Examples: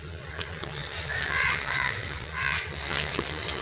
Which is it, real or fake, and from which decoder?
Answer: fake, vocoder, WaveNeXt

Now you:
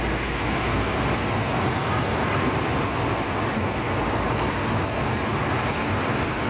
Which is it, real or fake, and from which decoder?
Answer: real